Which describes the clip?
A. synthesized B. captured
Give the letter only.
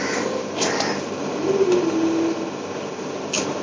B